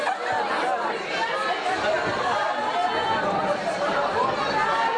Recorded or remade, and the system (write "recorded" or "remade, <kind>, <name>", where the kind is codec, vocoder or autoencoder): recorded